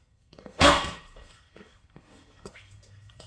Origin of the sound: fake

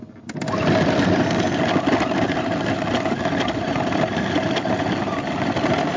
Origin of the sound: real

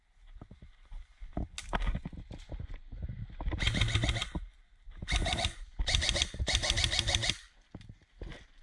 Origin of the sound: real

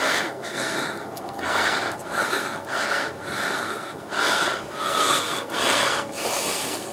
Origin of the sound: fake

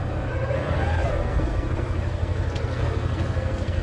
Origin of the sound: fake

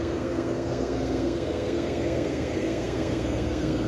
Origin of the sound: fake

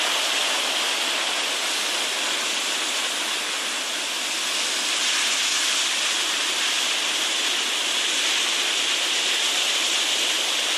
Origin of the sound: real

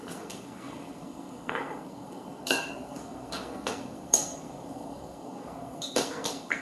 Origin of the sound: fake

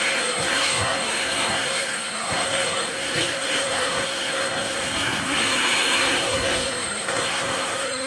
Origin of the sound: fake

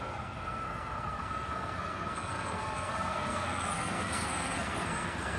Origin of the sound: fake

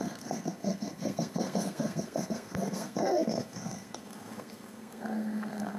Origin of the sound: fake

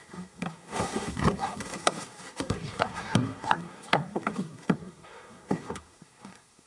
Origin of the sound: fake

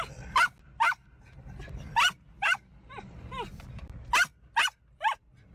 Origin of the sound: real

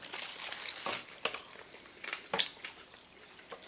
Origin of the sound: real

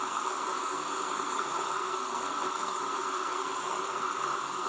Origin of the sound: fake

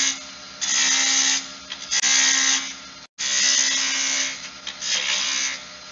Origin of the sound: real